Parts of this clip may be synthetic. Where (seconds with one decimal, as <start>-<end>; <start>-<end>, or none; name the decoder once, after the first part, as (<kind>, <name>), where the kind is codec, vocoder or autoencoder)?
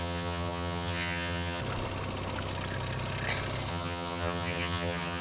0.0-1.6 (vocoder, HiFi-GAN); 3.7-5.2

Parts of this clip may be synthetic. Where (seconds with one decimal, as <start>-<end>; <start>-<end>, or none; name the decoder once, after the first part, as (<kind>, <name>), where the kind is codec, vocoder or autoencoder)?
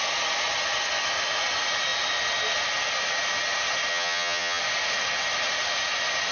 3.9-4.6 (vocoder, HiFi-GAN)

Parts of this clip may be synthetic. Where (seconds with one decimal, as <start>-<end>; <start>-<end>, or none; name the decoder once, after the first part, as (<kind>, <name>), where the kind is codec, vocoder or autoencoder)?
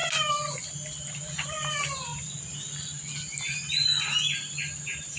none